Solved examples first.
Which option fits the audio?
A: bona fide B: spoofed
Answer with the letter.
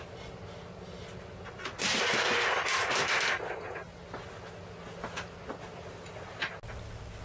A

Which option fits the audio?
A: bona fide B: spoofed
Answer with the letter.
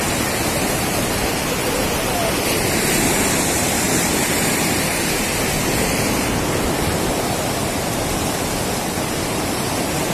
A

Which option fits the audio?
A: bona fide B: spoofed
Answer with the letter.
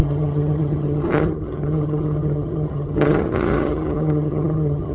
B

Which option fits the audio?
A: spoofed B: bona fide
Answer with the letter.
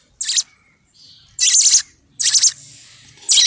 B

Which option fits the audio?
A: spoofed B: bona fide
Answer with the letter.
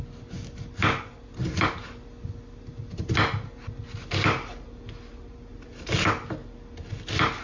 B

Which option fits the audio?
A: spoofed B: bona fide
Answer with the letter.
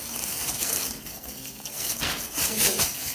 A